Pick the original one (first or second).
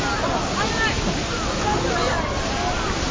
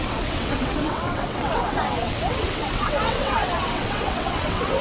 first